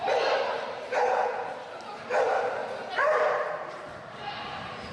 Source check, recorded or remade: remade